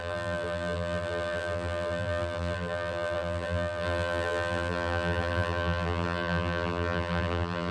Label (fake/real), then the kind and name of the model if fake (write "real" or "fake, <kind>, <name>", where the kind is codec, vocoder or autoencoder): fake, vocoder, BigVGAN v2